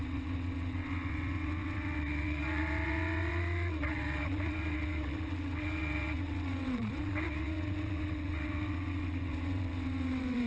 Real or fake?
fake